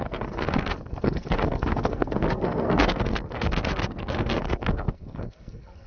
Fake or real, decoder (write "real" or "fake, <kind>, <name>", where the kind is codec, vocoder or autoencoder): fake, codec, SNAC